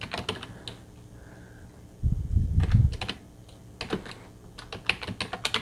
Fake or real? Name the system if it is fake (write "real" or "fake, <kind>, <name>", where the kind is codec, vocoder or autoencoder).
real